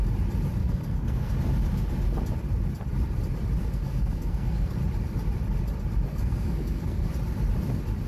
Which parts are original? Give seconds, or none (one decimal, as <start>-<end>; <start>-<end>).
0.0-0.6; 1.3-3.6; 4.7-6.1; 7.1-8.1